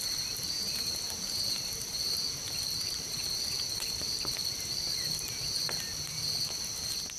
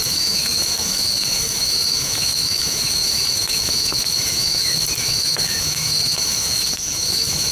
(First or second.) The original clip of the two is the first